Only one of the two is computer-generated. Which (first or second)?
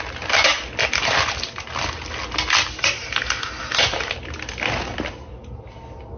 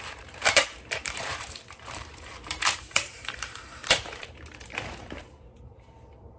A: second